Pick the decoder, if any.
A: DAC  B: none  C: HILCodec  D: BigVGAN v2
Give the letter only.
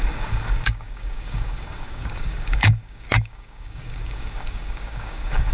A